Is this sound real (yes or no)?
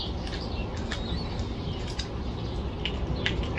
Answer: yes